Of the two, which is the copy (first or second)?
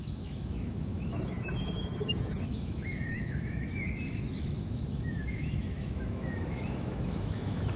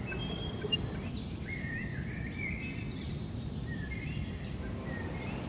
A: first